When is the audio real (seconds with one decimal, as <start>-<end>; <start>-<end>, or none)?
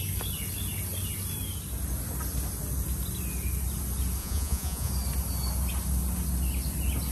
0.0-4.2; 4.9-7.1